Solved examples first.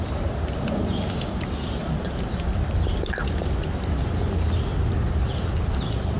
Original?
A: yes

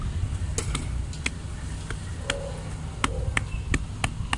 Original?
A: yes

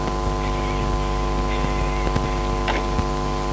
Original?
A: yes